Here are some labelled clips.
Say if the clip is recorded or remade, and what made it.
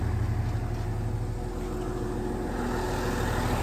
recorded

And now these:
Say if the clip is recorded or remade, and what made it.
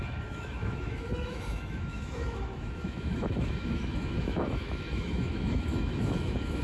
remade, autoencoder, DAC-VAE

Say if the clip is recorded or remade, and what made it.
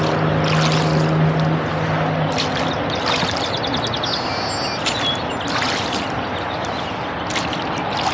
recorded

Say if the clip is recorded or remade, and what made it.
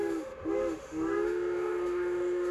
remade, autoencoder, DAC-VAE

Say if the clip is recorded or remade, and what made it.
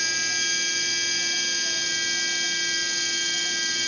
recorded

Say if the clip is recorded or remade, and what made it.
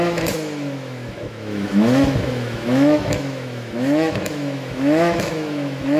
remade, autoencoder, DAC-VAE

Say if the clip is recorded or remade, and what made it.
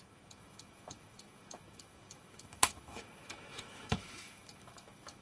remade, autoencoder, DAC-VAE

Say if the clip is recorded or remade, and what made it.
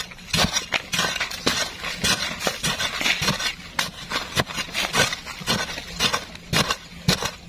recorded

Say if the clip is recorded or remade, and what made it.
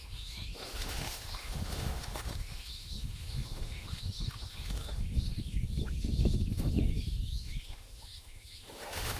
remade, autoencoder, DAC-VAE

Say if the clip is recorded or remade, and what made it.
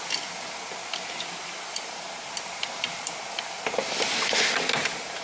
recorded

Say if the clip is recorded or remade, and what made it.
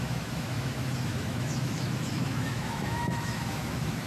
remade, autoencoder, DAC-VAE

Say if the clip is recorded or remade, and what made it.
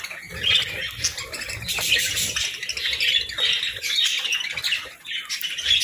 recorded